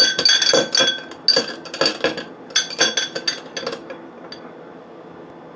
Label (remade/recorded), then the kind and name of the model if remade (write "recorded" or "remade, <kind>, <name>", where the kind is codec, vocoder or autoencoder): recorded